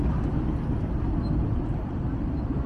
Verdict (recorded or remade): recorded